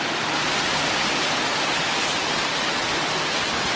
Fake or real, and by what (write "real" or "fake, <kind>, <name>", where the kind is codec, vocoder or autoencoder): real